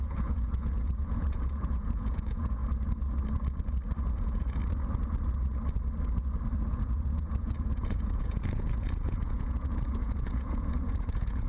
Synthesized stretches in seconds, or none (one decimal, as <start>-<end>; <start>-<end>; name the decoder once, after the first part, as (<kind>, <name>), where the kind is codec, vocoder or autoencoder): 0.0-2.6 (vocoder, Vocos); 4.0-4.6; 6.7-11.5

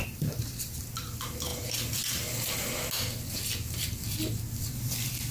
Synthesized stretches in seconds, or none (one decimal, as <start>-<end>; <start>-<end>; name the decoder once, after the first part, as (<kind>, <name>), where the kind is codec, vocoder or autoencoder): 0.0-1.5 (vocoder, BigVGAN v2); 4.6-5.3